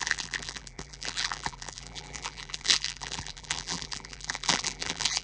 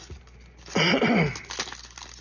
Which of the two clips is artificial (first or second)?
first